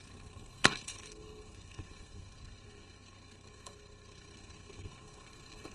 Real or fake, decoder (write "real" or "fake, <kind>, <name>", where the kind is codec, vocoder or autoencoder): fake, codec, SNAC